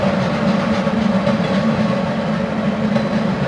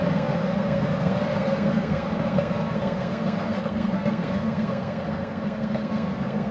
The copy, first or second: second